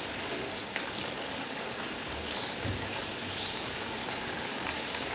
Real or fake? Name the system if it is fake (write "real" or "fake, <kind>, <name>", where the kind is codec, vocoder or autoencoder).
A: fake, codec, DAC